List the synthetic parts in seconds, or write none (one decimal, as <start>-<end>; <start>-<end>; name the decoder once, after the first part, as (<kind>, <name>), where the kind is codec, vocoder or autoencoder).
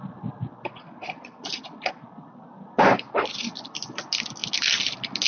none